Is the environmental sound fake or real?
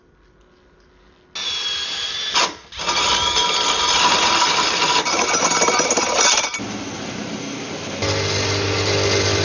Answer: real